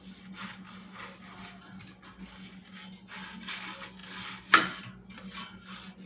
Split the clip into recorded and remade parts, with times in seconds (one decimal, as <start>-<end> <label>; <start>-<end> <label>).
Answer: 0.0-6.1 recorded